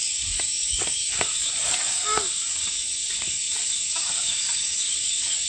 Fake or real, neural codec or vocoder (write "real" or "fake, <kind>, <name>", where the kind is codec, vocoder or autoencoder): fake, codec, DAC